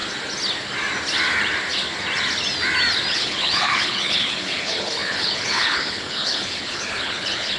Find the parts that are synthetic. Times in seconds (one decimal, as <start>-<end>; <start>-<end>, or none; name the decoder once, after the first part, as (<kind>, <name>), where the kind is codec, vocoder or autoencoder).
3.1-7.6 (codec, HILCodec)